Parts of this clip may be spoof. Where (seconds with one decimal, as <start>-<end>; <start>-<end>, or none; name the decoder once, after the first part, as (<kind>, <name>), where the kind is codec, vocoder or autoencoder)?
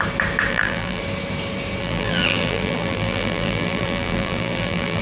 0.5-1.0 (vocoder, BigVGAN v2); 1.8-5.0